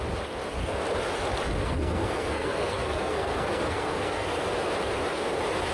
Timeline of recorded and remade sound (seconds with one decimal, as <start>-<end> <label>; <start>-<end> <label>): 0.0-1.6 recorded; 1.6-4.5 remade; 4.5-5.7 recorded

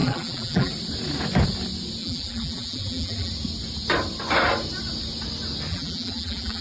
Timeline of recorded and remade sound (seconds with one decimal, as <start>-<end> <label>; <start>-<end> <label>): 0.0-0.7 remade; 0.7-2.0 recorded; 2.0-3.3 remade; 3.3-5.7 recorded; 5.7-6.6 remade

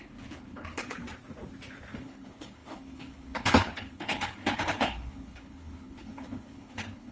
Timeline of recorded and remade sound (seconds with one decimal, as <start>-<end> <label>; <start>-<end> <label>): 0.0-1.0 remade; 1.0-2.0 recorded; 2.0-7.1 remade

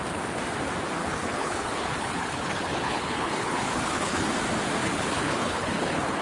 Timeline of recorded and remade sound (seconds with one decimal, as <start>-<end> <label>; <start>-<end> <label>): 0.0-1.0 recorded; 1.0-4.2 remade; 4.2-4.8 recorded; 4.8-6.2 remade

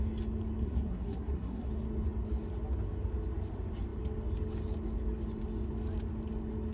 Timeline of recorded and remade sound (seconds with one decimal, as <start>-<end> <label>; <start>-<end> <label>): 0.0-0.6 recorded; 0.6-1.7 remade; 1.7-6.7 recorded

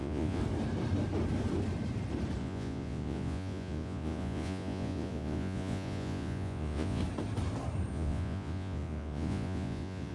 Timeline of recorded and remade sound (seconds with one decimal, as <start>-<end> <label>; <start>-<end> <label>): 0.0-0.4 remade; 0.4-2.4 recorded; 2.4-7.0 remade; 7.0-7.9 recorded; 7.9-10.1 remade

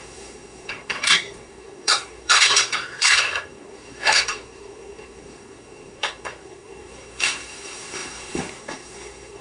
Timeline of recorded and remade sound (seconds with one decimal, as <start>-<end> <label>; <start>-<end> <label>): 0.0-9.4 remade